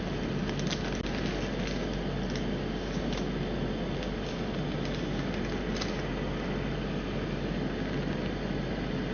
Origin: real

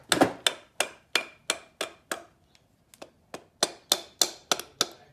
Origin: real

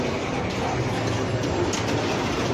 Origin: real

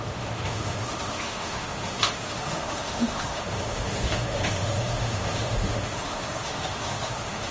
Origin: fake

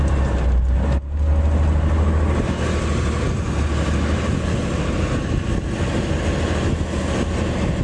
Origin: real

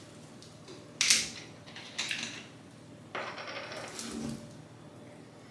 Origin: real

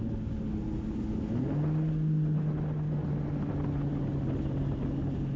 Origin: real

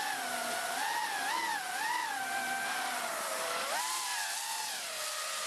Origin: real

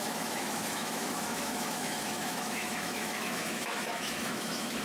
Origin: fake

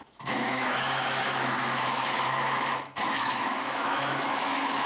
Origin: fake